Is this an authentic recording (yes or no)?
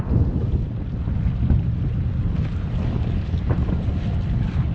yes